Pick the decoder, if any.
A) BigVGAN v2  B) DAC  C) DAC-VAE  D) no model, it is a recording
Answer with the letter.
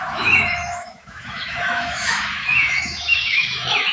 C